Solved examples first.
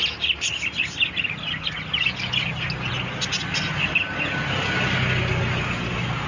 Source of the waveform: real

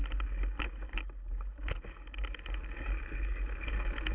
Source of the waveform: real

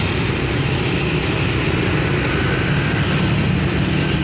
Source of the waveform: real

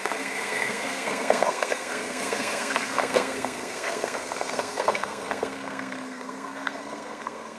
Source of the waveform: fake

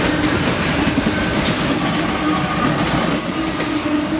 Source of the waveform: real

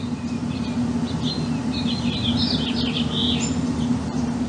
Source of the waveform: real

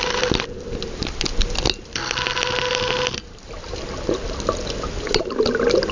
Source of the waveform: real